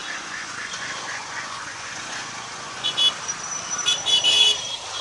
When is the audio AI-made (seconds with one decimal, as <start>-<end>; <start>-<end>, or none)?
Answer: 0.0-3.0